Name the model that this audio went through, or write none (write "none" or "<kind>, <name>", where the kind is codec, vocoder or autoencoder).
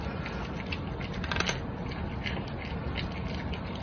none